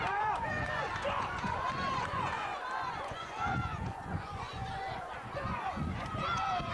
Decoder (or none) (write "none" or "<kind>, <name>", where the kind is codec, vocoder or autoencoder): vocoder, Vocos